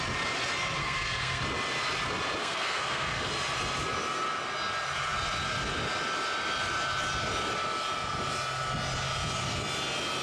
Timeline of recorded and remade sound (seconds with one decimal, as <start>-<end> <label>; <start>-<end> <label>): 0.0-0.8 recorded; 0.8-1.4 remade; 1.4-2.4 recorded; 2.4-3.3 remade; 3.3-10.2 recorded